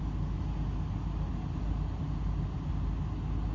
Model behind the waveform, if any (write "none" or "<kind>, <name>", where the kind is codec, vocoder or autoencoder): none